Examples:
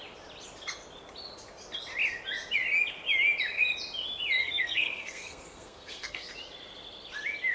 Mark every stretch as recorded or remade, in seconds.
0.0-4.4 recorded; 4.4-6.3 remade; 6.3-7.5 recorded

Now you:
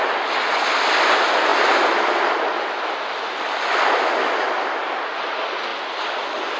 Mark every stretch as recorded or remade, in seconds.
0.0-6.6 recorded

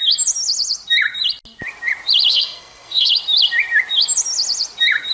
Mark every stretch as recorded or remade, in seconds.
0.0-2.3 recorded; 2.3-3.1 remade; 3.1-5.1 recorded

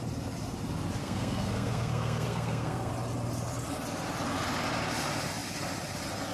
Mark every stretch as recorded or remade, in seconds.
0.0-1.0 recorded; 1.0-2.9 remade; 2.9-6.3 recorded

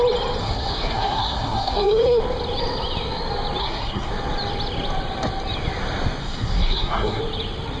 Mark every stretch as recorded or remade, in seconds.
0.0-0.4 recorded; 0.4-2.2 remade; 2.2-3.6 recorded; 3.6-4.1 remade; 4.1-6.2 recorded; 6.2-7.2 remade; 7.2-7.8 recorded

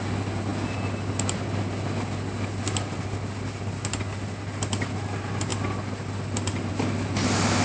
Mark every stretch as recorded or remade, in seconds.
0.0-7.6 recorded